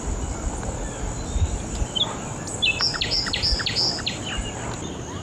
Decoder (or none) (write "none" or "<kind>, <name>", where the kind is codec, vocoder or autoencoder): none